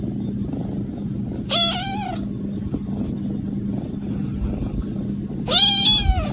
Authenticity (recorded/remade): recorded